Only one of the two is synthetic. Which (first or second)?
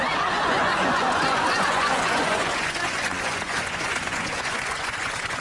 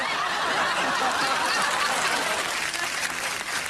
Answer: first